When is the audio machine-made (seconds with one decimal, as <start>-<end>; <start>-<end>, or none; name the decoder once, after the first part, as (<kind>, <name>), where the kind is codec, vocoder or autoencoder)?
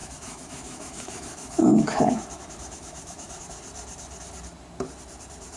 0.0-3.4 (autoencoder, DAC-VAE)